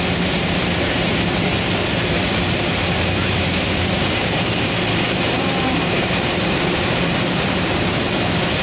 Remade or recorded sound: remade